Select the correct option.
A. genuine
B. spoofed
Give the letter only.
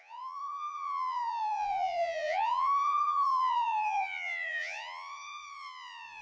B